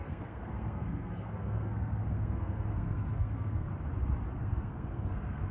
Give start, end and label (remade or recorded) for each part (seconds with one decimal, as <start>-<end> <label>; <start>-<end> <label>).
0.0-3.7 remade; 3.7-4.4 recorded; 4.4-5.5 remade

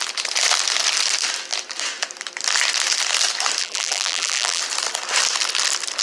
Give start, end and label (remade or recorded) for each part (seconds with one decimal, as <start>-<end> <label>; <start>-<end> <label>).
0.0-3.6 recorded; 3.6-4.6 remade; 4.6-6.0 recorded

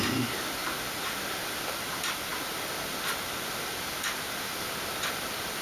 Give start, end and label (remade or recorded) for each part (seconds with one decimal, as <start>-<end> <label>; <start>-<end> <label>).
0.0-5.6 recorded

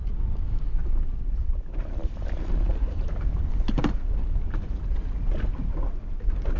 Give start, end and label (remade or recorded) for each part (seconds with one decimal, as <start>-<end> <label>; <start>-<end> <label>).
0.0-0.8 recorded; 0.8-4.8 remade; 4.8-6.6 recorded

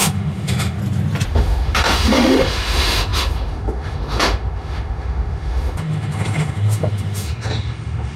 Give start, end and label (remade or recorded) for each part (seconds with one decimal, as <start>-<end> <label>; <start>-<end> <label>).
0.0-0.8 remade; 0.8-1.3 recorded; 1.3-8.2 remade

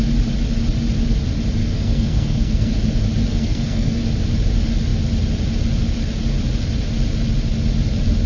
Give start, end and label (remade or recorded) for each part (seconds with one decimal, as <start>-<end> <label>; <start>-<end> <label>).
0.0-1.6 recorded; 1.6-2.7 remade; 2.7-3.3 recorded; 3.3-4.0 remade; 4.0-8.3 recorded